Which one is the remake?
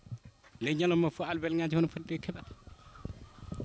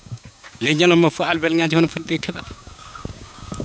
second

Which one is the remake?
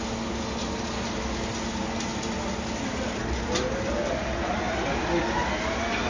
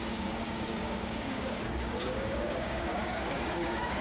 second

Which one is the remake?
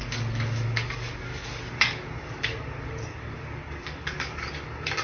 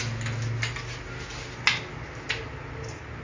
first